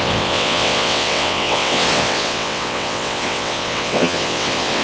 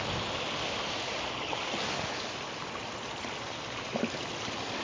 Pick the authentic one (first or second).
second